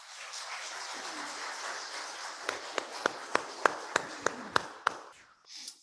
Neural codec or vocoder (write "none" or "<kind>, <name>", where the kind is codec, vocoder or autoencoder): none